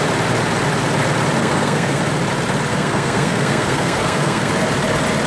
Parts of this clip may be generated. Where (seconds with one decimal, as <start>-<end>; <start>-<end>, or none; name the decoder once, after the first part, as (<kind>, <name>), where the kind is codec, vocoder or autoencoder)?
1.4-2.0 (codec, SNAC); 2.7-4.5